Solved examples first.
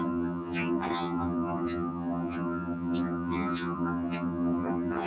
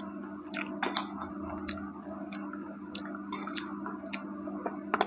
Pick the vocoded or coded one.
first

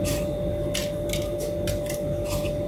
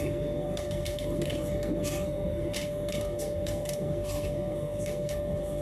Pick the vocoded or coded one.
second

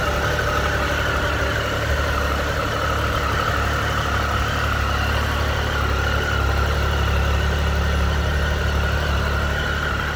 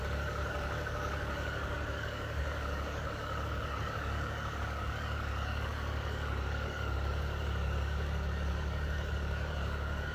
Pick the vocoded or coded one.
second